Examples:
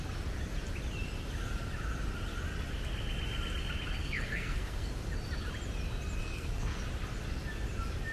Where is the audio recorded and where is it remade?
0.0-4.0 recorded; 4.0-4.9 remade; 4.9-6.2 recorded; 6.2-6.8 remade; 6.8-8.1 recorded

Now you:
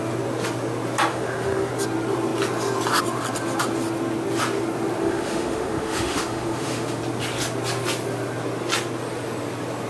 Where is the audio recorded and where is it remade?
0.0-1.1 recorded; 1.1-1.7 remade; 1.7-5.0 recorded; 5.0-7.0 remade; 7.0-9.9 recorded

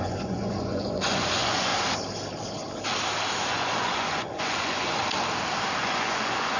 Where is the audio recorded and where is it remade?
0.0-1.7 remade; 1.7-3.5 recorded; 3.5-5.0 remade; 5.0-5.8 recorded; 5.8-6.6 remade